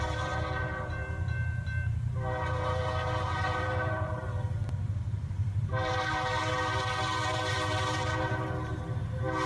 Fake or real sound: fake